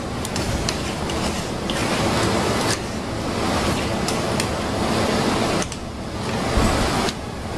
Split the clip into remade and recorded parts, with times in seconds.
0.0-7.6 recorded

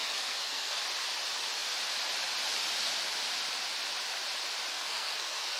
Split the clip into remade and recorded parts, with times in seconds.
0.0-0.8 remade; 0.8-4.7 recorded; 4.7-5.6 remade